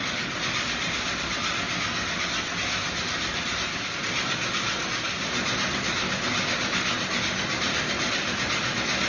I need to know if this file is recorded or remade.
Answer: recorded